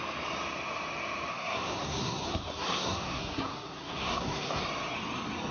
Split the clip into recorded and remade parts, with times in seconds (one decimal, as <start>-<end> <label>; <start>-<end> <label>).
0.0-1.3 recorded; 1.3-4.6 remade; 4.6-5.5 recorded